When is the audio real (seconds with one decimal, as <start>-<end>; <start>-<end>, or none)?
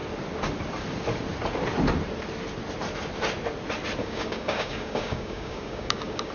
0.0-4.0